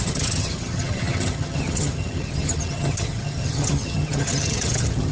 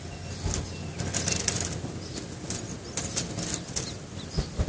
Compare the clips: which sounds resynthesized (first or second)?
first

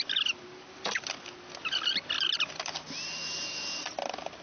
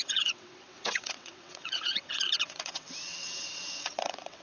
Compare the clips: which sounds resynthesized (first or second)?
second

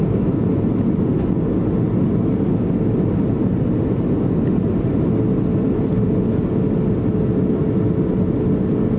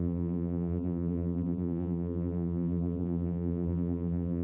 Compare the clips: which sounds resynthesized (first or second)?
second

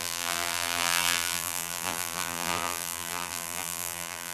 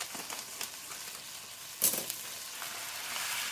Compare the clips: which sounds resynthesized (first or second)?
first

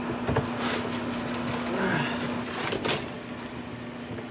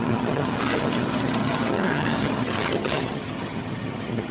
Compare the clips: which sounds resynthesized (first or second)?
second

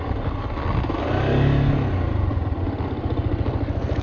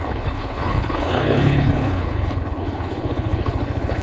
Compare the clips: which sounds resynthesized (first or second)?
second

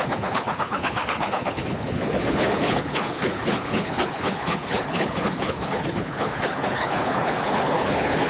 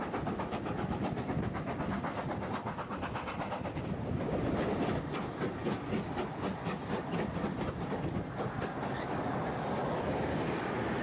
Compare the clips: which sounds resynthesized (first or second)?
first